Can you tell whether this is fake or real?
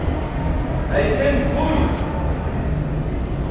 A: real